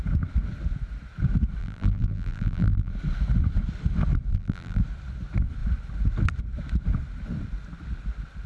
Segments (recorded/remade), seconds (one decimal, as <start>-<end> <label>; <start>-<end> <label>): 0.0-1.6 recorded; 1.6-2.9 remade; 2.9-4.3 recorded; 4.3-4.8 remade; 4.8-8.5 recorded